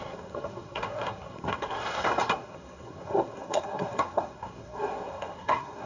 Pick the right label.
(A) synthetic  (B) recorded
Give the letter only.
A